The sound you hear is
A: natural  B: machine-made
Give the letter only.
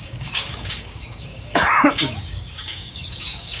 B